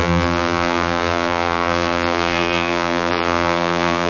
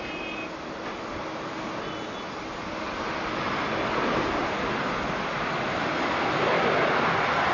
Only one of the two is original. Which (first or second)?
second